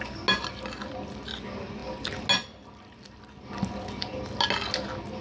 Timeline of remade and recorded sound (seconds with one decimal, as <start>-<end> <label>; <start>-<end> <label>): 0.0-5.2 recorded